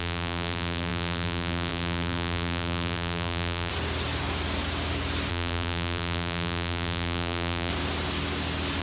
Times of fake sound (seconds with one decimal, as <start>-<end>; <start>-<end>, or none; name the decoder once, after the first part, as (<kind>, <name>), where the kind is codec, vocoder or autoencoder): 0.0-3.7 (vocoder, BigVGAN v2); 5.3-7.7